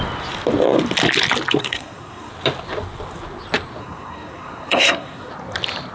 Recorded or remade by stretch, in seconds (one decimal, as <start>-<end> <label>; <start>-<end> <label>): 0.0-1.6 recorded; 1.6-2.3 remade; 2.3-3.8 recorded; 3.8-5.3 remade; 5.3-5.9 recorded